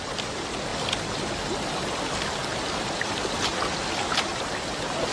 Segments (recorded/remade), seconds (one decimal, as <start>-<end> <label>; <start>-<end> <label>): 0.0-0.7 recorded; 0.7-1.7 remade; 1.7-2.4 recorded; 2.4-4.5 remade; 4.5-5.1 recorded